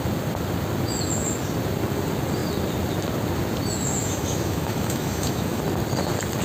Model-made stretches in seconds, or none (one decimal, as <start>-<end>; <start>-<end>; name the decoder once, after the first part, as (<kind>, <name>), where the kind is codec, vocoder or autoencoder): 4.0-5.6 (autoencoder, DAC-VAE)